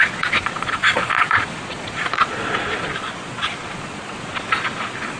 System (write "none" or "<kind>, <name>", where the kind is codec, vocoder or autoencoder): vocoder, Vocos